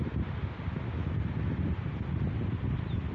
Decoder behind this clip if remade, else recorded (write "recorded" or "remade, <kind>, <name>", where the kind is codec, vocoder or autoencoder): recorded